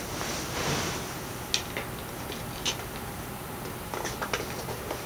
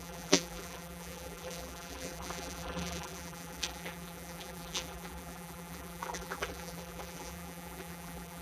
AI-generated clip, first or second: second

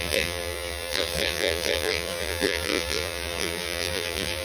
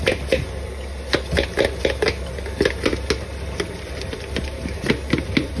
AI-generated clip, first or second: first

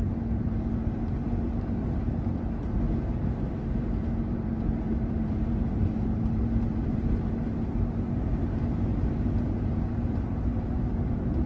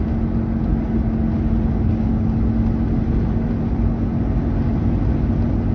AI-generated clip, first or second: first